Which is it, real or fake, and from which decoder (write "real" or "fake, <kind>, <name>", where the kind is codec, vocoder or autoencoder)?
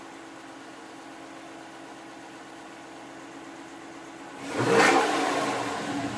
real